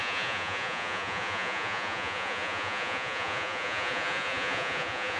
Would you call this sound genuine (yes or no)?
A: no